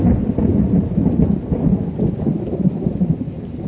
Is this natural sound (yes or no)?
yes